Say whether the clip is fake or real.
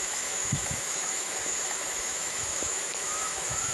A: fake